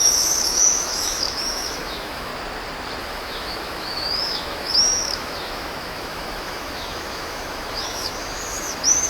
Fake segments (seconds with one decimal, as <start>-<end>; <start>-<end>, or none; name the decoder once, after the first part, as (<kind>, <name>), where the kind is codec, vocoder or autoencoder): 0.0-2.3 (autoencoder, DAC-VAE); 3.0-9.1